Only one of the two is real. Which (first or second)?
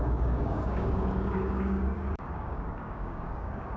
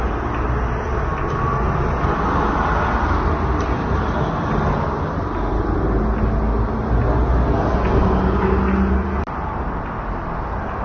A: second